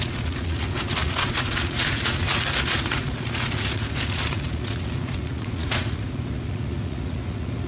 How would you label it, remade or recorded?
remade